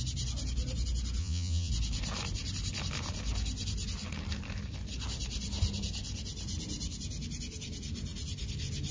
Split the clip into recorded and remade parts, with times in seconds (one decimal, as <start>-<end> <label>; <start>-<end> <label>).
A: 0.0-1.2 recorded; 1.2-1.7 remade; 1.7-8.9 recorded

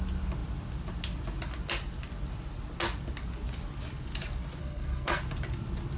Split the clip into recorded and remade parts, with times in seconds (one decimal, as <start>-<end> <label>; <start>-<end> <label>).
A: 0.0-4.6 recorded; 4.6-5.2 remade; 5.2-6.0 recorded

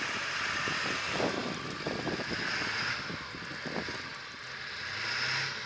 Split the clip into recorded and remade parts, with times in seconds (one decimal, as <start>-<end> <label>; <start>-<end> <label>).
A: 0.0-5.7 recorded

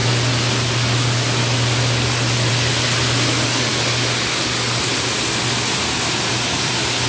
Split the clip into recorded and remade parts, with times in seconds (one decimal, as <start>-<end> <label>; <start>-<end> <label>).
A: 0.0-7.1 recorded

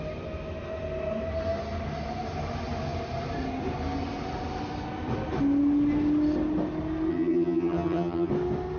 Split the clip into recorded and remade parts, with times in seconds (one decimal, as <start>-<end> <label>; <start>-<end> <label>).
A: 0.0-7.1 recorded; 7.1-8.3 remade; 8.3-8.8 recorded